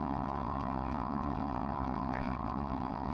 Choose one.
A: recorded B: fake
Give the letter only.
B